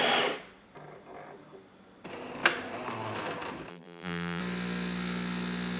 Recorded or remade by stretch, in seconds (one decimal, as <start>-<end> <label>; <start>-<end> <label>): 0.0-3.7 recorded; 3.7-4.4 remade; 4.4-5.8 recorded